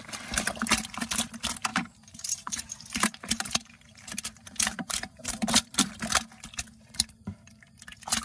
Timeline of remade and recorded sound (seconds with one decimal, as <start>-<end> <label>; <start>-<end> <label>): 0.0-1.7 recorded; 1.7-5.9 remade; 5.9-8.2 recorded